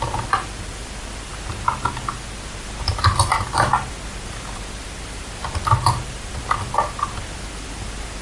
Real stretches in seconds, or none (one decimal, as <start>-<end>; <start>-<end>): 0.0-8.2

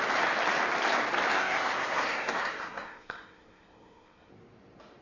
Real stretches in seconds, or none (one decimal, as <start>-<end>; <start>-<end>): 0.0-1.3; 4.3-5.0

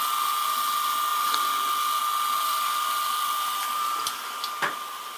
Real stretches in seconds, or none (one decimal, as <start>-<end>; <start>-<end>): 0.0-2.4; 4.2-5.2